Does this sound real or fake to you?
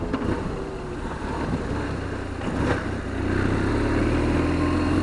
real